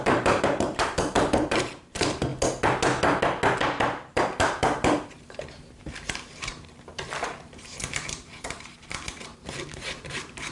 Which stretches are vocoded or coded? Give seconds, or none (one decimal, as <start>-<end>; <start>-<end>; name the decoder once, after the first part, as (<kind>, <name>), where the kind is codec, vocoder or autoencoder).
0.0-2.3 (vocoder, BigVGAN v2); 3.6-10.5